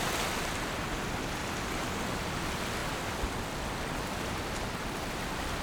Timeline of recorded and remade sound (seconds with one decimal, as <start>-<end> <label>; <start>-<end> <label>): 0.0-5.6 recorded